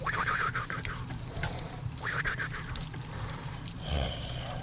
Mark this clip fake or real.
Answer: fake